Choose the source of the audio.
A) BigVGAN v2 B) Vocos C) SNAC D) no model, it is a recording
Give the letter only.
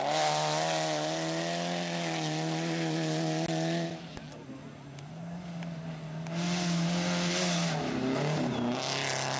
D